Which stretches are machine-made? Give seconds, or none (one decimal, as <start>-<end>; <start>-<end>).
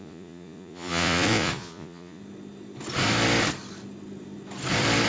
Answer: 0.0-2.2